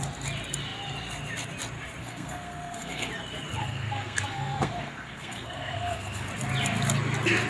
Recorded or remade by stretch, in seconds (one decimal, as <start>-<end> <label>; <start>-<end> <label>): 0.0-2.0 recorded; 2.0-3.1 remade; 3.1-3.6 recorded; 3.6-6.3 remade; 6.3-7.5 recorded